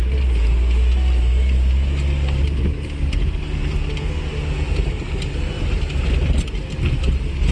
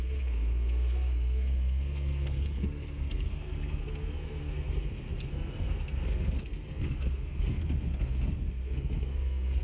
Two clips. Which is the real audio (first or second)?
first